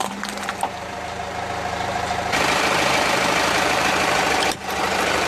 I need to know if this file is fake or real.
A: fake